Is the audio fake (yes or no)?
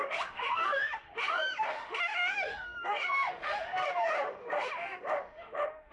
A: yes